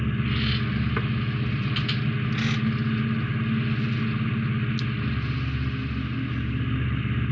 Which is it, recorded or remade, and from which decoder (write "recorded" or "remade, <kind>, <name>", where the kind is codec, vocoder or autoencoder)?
recorded